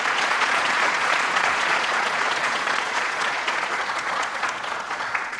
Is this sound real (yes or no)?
no